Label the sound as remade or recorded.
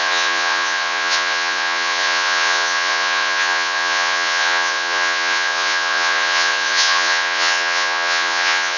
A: remade